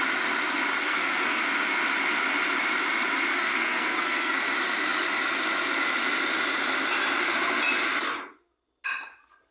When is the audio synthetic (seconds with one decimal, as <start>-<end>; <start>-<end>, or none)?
0.8-1.4; 3.3-4.4